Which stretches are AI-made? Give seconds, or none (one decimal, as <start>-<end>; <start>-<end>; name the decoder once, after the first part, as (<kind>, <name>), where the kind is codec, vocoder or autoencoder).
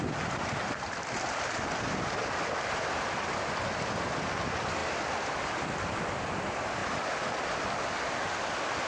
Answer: 4.8-5.5 (vocoder, BigVGAN v2); 6.8-7.8